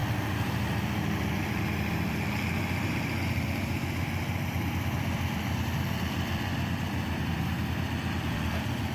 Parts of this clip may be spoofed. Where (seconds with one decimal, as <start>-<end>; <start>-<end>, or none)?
0.0-8.9